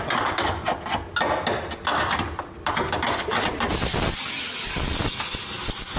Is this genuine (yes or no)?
yes